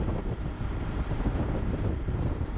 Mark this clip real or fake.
fake